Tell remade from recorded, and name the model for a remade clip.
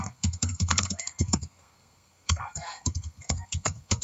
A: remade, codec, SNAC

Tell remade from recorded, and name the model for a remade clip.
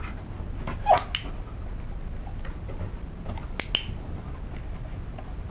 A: recorded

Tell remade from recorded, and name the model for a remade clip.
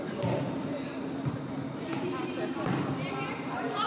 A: recorded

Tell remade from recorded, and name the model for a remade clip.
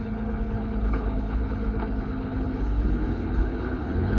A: remade, codec, HILCodec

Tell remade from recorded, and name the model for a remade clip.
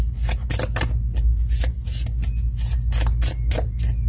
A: recorded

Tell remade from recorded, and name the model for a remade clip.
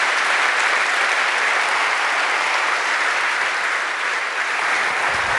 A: recorded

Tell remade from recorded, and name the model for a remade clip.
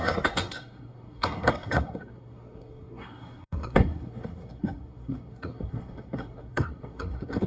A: remade, codec, SNAC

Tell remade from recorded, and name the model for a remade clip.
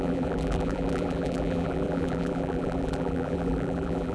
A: remade, vocoder, BigVGAN v2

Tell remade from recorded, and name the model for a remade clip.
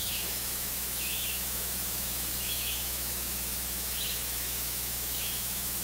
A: remade, autoencoder, DAC-VAE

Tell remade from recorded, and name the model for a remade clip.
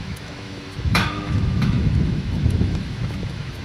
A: remade, autoencoder, DAC-VAE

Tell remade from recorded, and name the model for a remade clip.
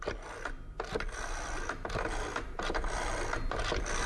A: recorded